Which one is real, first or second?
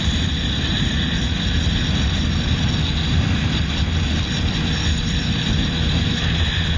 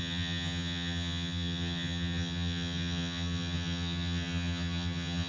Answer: first